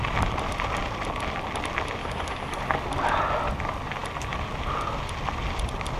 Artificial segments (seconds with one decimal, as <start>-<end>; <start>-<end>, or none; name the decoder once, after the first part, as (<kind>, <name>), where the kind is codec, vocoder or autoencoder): 2.0-2.6 (codec, DAC)